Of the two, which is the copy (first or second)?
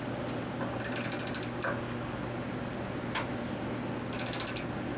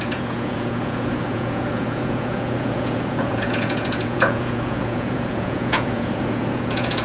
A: second